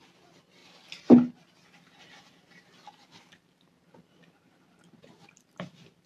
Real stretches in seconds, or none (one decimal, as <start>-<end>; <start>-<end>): 0.6-3.6